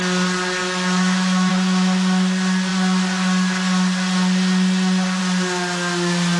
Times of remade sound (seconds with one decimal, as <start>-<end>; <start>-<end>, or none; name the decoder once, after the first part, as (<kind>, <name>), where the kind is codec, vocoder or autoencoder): 0.6-1.5 (autoencoder, DAC-VAE)